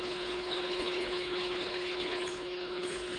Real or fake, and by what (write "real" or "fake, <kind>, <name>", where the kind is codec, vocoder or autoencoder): fake, codec, HILCodec